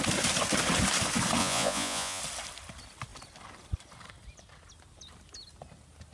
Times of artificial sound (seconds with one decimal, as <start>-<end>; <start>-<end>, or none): 1.4-2.2